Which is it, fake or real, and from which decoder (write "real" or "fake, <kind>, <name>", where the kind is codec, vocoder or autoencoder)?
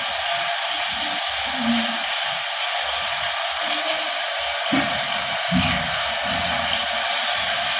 real